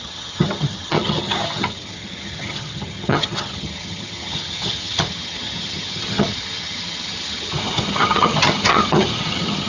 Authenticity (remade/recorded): remade